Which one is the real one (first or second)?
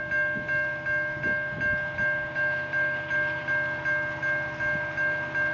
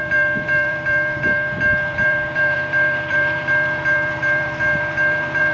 first